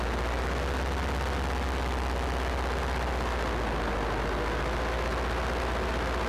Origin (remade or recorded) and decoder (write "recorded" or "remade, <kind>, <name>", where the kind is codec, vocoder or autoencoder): recorded